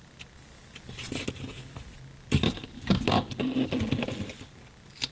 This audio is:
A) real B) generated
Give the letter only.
A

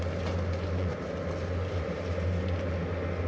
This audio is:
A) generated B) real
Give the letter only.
B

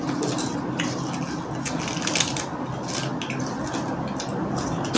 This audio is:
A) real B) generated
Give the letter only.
A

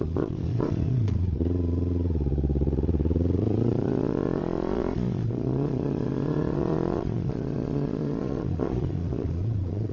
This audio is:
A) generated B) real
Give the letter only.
A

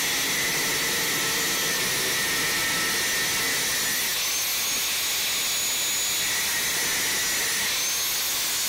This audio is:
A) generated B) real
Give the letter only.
B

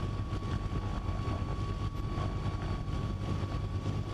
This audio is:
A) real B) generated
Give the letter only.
A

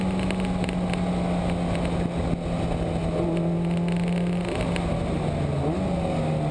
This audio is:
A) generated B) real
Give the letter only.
B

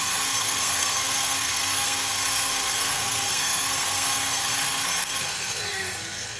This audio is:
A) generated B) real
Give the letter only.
A